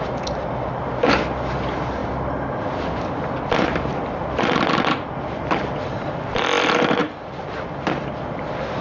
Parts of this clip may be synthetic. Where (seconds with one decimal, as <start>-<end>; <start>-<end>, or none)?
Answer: none